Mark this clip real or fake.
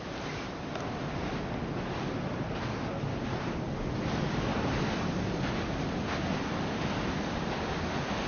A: real